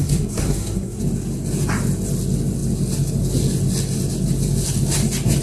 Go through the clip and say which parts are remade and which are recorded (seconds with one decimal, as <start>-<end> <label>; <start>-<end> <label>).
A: 0.0-1.0 remade; 1.0-5.4 recorded